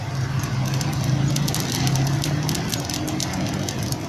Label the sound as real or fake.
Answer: real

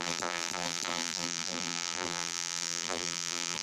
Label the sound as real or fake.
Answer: fake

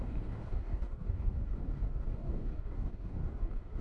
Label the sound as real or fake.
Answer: fake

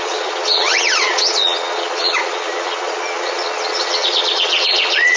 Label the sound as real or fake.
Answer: fake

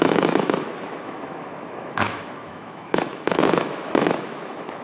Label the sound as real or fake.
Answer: fake